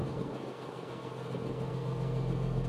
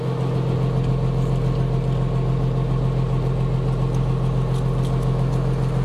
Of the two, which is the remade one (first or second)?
first